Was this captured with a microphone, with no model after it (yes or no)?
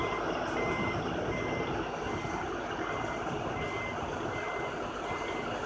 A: yes